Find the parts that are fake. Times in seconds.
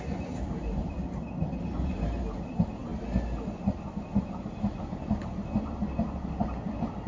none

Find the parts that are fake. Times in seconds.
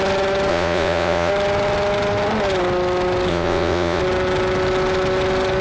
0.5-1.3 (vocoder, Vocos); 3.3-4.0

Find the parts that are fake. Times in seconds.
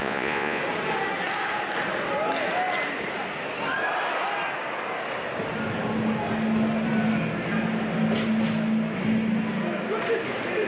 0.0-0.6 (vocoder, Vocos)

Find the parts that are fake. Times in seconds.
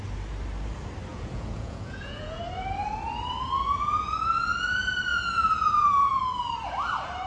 1.1-2.4 (vocoder, Vocos); 5.1-6.2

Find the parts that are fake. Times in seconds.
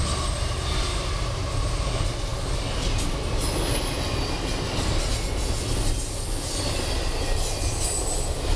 none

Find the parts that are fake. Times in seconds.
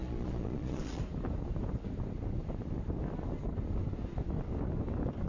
0.0-1.0 (vocoder, Vocos)